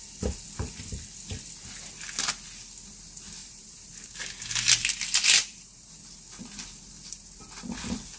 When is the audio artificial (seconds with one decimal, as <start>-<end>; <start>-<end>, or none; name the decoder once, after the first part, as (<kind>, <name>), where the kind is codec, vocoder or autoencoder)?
3.4-3.9 (vocoder, BigVGAN v2); 5.4-5.9